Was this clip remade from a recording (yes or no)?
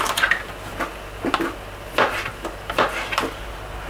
no